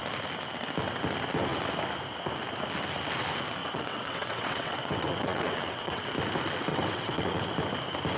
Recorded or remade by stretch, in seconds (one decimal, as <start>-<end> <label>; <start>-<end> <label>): 0.0-3.6 recorded; 3.6-6.0 remade; 6.0-6.7 recorded; 6.7-7.5 remade; 7.5-8.2 recorded